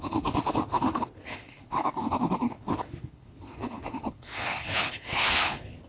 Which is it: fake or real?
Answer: fake